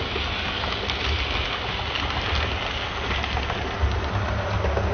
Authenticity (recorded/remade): recorded